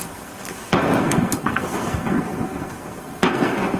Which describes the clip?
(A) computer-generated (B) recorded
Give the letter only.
A